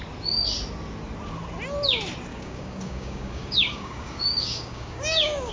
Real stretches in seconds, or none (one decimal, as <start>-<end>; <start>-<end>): 0.0-2.3